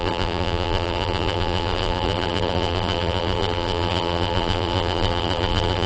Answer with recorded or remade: remade